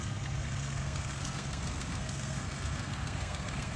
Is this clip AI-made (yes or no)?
yes